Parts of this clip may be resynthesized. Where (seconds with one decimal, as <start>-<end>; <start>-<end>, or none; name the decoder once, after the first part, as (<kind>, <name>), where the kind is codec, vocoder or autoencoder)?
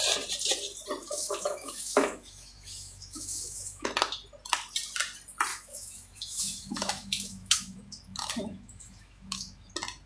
1.0-3.9 (autoencoder, DAC-VAE); 5.5-9.7